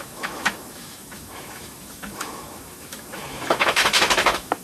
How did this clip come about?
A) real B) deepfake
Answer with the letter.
B